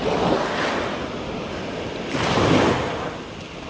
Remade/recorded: recorded